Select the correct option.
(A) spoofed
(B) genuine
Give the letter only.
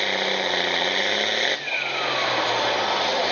B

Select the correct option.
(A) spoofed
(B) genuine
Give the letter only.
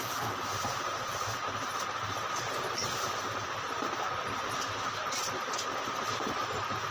B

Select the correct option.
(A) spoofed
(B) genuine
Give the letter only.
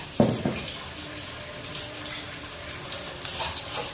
B